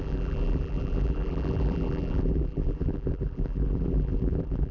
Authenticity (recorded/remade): remade